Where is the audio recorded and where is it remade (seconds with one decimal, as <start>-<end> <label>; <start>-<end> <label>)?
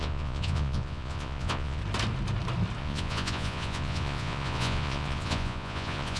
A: 0.0-1.8 remade; 1.8-2.8 recorded; 2.8-6.2 remade